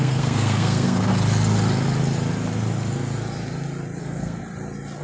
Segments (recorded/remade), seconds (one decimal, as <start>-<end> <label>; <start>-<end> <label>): 0.0-1.1 remade; 1.1-4.0 recorded; 4.0-4.4 remade; 4.4-5.0 recorded